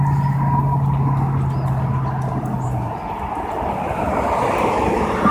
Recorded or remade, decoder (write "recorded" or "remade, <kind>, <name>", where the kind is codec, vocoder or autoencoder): recorded